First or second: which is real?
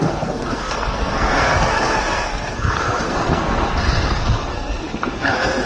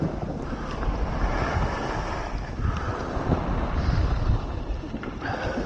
second